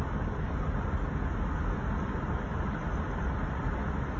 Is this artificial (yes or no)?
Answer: no